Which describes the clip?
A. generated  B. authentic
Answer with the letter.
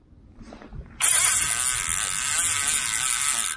B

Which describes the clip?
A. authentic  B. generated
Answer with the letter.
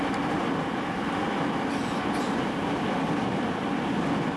A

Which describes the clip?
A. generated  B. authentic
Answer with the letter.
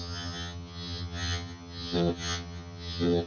A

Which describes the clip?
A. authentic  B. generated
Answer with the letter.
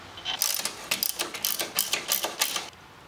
A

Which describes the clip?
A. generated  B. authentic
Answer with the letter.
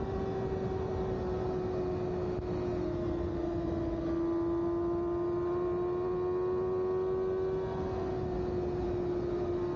B